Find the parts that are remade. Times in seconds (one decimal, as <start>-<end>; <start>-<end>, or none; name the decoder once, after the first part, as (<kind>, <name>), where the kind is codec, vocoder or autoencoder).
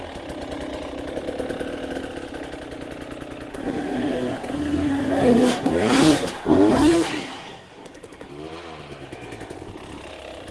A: 3.5-8.3 (codec, SNAC)